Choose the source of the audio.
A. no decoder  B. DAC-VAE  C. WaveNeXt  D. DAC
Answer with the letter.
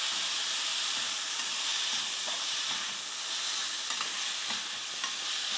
A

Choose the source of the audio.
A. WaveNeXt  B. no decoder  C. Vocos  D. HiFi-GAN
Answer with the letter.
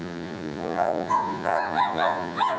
C